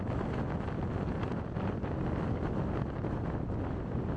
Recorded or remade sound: recorded